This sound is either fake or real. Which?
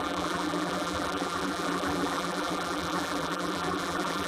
fake